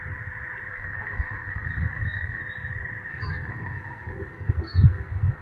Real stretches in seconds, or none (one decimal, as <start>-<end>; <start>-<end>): 0.0-0.7; 2.4-3.1